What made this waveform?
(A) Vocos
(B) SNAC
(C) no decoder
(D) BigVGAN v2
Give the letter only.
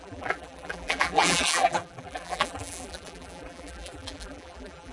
D